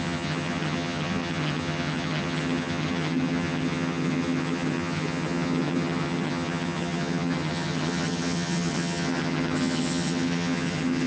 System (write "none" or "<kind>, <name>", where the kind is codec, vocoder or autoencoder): vocoder, HiFi-GAN